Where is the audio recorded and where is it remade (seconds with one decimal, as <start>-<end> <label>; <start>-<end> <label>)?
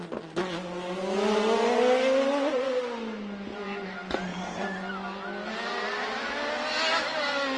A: 0.0-7.6 recorded